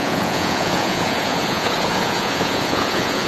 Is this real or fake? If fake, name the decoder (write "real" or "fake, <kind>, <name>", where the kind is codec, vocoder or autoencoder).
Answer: fake, vocoder, Vocos